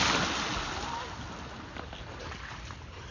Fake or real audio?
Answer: real